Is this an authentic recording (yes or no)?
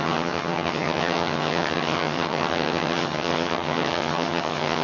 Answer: no